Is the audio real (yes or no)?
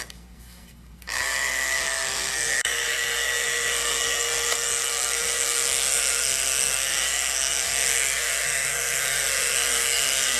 no